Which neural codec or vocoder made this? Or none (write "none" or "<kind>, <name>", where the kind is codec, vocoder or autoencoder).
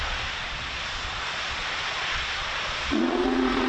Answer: vocoder, Vocos